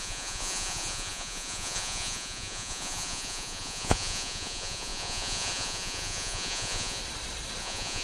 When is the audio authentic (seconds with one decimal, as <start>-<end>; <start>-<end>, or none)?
7.0-7.6